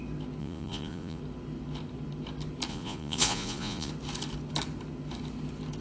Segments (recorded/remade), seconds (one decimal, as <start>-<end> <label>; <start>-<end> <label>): 0.0-0.4 recorded; 0.4-1.2 remade; 1.2-2.7 recorded; 2.7-3.9 remade; 3.9-5.8 recorded